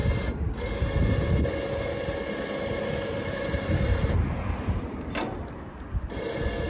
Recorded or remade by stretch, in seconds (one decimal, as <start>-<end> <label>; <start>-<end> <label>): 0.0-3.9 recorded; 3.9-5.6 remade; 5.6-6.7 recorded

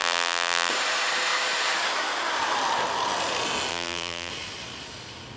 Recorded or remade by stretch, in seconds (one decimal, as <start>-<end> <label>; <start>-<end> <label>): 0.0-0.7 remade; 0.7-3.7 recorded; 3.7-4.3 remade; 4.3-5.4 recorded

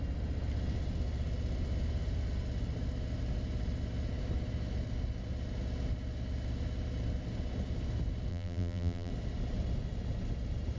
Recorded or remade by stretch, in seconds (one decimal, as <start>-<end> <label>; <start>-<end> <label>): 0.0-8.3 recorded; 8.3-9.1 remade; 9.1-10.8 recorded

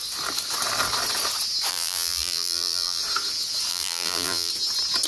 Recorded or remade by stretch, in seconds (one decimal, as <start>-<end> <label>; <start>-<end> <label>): 0.0-1.7 recorded; 1.7-3.0 remade; 3.0-3.7 recorded; 3.7-4.5 remade; 4.5-5.1 recorded